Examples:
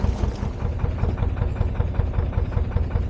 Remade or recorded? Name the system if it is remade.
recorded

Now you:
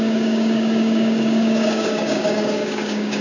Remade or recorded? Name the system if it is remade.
remade, codec, DAC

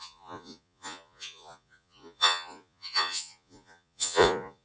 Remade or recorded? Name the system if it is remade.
remade, vocoder, Vocos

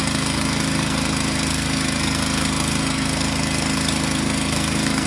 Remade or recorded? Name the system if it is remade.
remade, codec, SNAC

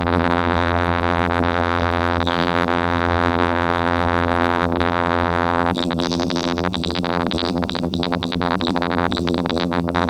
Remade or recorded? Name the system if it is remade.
remade, vocoder, BigVGAN v2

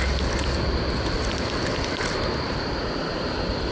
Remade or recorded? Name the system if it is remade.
recorded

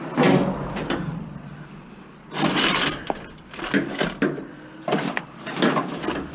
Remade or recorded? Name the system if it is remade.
recorded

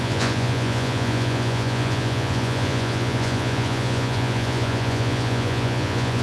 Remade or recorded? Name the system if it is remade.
remade, vocoder, Vocos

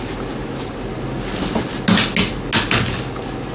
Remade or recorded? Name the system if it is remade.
recorded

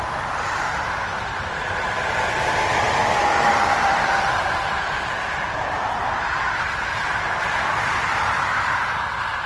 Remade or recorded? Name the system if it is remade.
remade, vocoder, BigVGAN v2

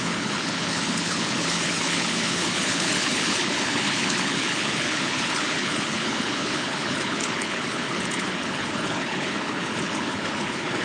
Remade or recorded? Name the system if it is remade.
remade, codec, HILCodec